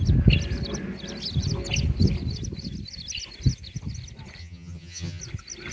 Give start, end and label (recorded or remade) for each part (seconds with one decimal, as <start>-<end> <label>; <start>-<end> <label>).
0.0-4.4 recorded; 4.4-5.2 remade; 5.2-5.7 recorded